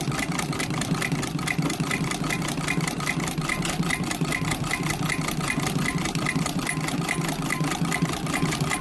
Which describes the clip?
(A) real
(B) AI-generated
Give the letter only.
B